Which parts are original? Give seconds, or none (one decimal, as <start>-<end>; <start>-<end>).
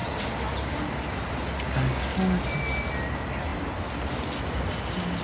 0.0-5.2